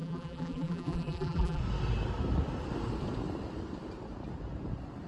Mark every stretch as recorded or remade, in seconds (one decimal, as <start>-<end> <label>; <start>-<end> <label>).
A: 0.0-1.6 remade; 1.6-5.1 recorded